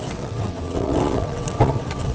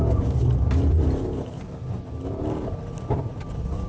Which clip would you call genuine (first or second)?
second